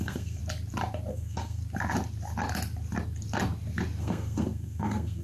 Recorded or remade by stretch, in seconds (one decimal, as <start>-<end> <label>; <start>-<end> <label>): 0.0-0.4 remade; 0.4-1.1 recorded; 1.1-1.6 remade; 1.6-4.0 recorded; 4.0-5.2 remade

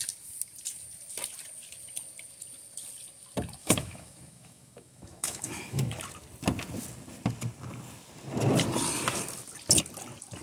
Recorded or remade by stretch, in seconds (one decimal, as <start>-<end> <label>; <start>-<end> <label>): 0.0-3.6 recorded; 3.6-6.0 remade; 6.0-10.4 recorded

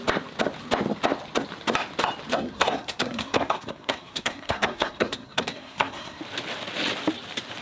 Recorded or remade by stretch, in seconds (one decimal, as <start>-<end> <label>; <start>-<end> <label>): 0.0-2.3 recorded; 2.3-6.2 remade; 6.2-7.6 recorded

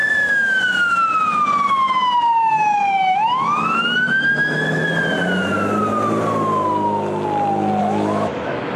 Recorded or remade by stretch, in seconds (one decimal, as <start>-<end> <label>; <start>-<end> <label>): 0.0-0.6 remade; 0.6-2.4 recorded; 2.4-4.8 remade; 4.8-7.8 recorded; 7.8-8.8 remade

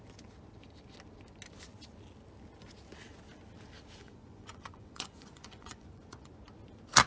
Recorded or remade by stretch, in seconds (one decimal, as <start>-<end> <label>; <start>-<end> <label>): 0.0-4.0 recorded; 4.0-6.3 remade; 6.3-7.1 recorded

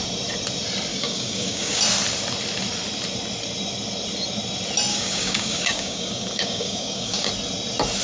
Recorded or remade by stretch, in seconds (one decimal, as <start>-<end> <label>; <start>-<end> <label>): 0.0-0.9 recorded; 0.9-1.8 remade; 1.8-4.9 recorded; 4.9-7.3 remade; 7.3-8.0 recorded

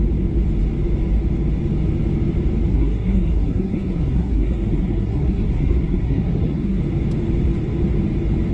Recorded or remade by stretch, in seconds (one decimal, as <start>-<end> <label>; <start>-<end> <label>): 0.0-2.7 recorded; 2.7-6.8 remade; 6.8-8.5 recorded

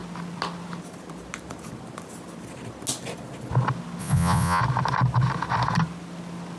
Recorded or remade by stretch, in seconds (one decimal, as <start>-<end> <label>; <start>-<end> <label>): 0.0-4.0 recorded; 4.0-4.6 remade; 4.6-6.6 recorded